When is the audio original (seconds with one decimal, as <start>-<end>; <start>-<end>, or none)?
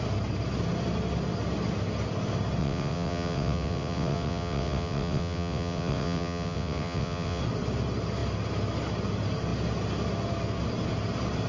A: 0.0-2.6; 7.4-11.5